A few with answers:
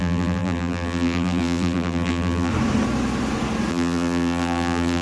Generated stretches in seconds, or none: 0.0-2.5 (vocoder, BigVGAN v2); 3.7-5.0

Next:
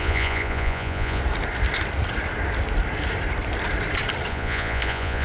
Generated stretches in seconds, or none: 0.0-1.2 (vocoder, Vocos); 4.3-5.2

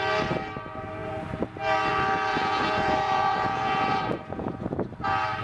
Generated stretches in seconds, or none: 2.3-4.5 (vocoder, Vocos)

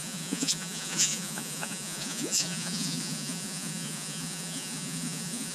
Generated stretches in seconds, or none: 0.0-5.5 (vocoder, Vocos)

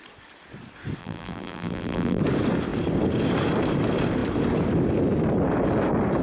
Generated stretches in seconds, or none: 1.0-2.2 (vocoder, BigVGAN v2)

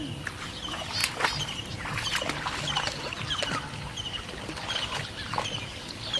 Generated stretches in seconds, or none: none

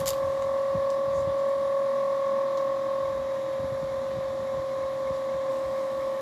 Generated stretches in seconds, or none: 5.5-6.2 (autoencoder, DAC-VAE)

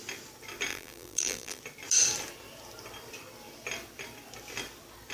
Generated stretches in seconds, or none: 0.7-1.6 (vocoder, BigVGAN v2)